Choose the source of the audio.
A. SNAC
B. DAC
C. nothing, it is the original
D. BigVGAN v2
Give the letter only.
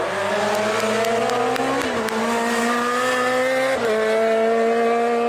C